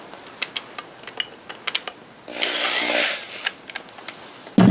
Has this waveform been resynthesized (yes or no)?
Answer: no